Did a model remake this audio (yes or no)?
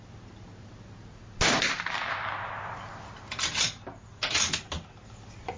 no